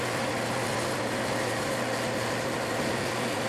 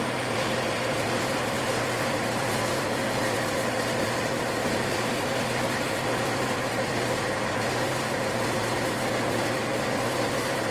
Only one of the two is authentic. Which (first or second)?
first